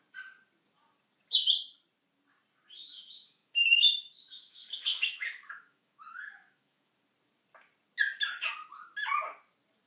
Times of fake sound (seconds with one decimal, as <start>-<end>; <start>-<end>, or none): 2.8-6.9